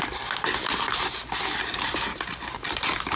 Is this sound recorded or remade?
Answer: recorded